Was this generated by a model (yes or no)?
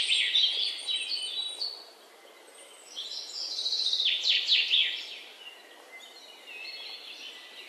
no